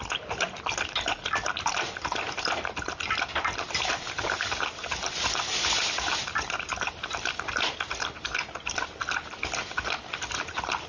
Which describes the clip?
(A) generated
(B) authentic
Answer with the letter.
B